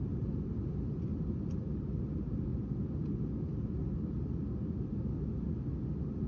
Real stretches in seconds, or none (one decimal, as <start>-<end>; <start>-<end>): 0.0-1.1; 1.6-6.3